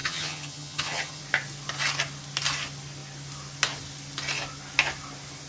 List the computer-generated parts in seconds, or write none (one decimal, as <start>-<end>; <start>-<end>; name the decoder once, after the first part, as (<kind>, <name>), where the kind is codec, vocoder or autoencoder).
0.0-1.2 (vocoder, HiFi-GAN)